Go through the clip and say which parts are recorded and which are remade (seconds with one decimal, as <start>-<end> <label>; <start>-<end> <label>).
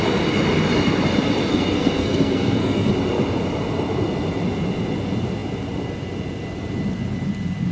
0.0-1.5 recorded; 1.5-2.9 remade; 2.9-7.7 recorded